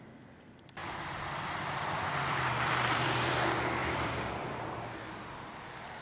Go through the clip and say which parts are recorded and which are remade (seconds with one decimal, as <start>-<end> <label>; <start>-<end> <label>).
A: 0.0-0.8 recorded; 0.8-3.3 remade; 3.3-3.8 recorded; 3.8-4.7 remade; 4.7-6.0 recorded